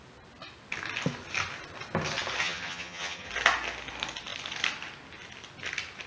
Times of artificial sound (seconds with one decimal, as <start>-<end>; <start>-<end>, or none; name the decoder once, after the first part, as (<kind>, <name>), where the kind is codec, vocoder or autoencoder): 2.4-3.3 (vocoder, HiFi-GAN)